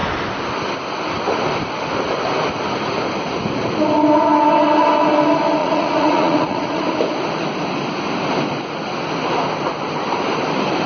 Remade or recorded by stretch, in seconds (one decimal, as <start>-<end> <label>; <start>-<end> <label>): 0.0-5.6 recorded; 5.6-6.8 remade; 6.8-10.9 recorded

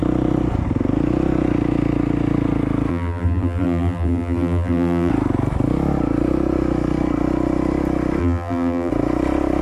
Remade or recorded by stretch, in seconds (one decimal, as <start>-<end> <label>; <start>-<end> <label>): 0.0-2.9 recorded; 2.9-5.1 remade; 5.1-8.2 recorded; 8.2-8.9 remade; 8.9-9.6 recorded

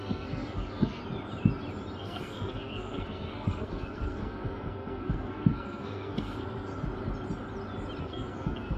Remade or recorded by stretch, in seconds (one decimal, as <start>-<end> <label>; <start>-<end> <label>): 0.0-1.0 remade; 1.0-2.0 recorded; 2.0-6.7 remade; 6.7-8.0 recorded; 8.0-8.8 remade

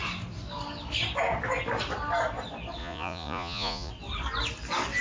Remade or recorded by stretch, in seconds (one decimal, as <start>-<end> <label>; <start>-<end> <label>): 0.0-2.8 recorded; 2.8-3.9 remade; 3.9-5.0 recorded